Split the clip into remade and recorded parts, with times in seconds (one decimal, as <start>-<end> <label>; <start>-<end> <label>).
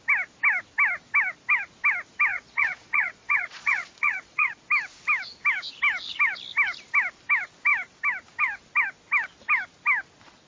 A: 0.0-2.3 recorded; 2.3-4.6 remade; 4.6-10.5 recorded